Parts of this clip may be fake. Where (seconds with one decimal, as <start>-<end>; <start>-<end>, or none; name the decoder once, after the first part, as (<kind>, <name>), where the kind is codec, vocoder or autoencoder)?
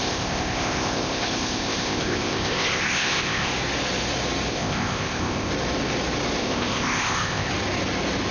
0.0-3.5 (codec, ZipCodec); 4.5-5.5; 6.4-7.5